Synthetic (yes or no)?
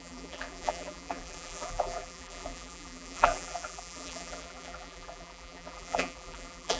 yes